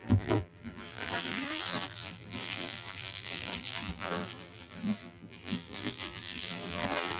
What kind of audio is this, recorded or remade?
remade